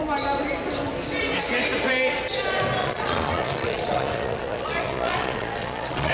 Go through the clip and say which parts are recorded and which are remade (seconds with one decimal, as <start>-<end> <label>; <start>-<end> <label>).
0.0-2.8 recorded; 2.8-6.1 remade